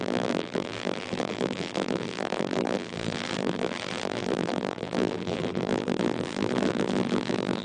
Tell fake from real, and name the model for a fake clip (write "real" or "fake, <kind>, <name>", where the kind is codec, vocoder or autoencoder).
fake, vocoder, BigVGAN v2